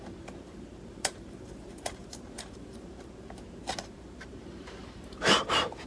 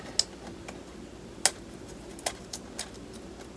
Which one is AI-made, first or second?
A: first